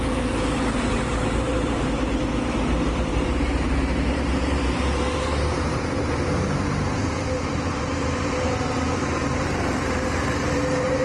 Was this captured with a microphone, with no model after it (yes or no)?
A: no